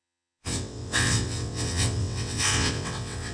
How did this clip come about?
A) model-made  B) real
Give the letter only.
A